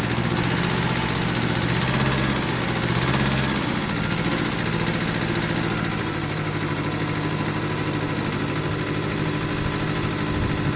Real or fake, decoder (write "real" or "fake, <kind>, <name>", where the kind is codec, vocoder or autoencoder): real